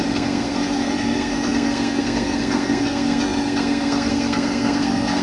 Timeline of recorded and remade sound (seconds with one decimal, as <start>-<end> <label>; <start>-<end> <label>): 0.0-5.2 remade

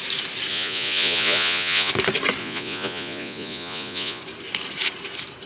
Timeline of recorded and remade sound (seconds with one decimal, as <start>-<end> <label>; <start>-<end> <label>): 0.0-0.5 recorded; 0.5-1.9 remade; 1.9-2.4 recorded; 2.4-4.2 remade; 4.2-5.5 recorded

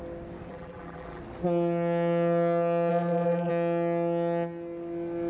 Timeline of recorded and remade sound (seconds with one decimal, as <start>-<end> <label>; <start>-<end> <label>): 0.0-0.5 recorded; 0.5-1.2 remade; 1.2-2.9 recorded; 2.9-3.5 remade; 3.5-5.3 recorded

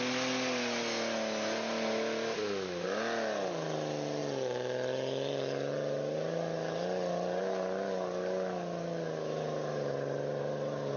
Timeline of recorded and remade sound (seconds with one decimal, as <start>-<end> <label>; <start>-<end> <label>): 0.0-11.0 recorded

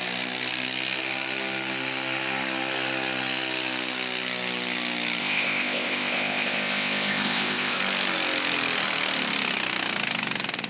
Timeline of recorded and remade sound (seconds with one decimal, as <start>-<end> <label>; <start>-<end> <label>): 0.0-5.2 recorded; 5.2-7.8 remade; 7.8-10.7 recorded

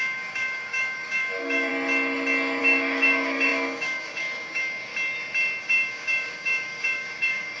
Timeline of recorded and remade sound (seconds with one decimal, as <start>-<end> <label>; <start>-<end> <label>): 0.0-1.7 remade; 1.7-2.6 recorded; 2.6-4.9 remade; 4.9-5.6 recorded; 5.6-7.6 remade

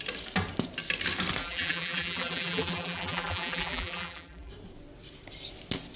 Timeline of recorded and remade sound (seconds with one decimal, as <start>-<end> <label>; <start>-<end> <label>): 0.0-1.4 recorded; 1.4-4.5 remade; 4.5-6.0 recorded